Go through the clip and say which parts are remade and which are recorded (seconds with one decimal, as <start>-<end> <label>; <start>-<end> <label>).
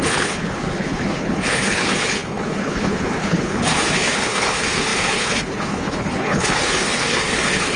0.0-7.8 remade